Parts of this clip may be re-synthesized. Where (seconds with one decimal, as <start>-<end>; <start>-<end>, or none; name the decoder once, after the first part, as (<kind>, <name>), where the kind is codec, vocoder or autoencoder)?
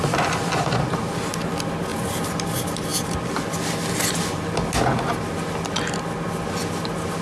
none